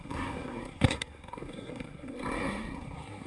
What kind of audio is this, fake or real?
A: fake